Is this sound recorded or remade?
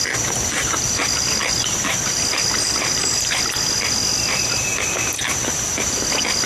recorded